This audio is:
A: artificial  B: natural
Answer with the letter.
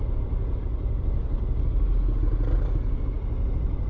B